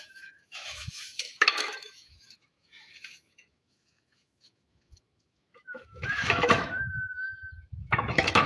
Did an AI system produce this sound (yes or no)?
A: yes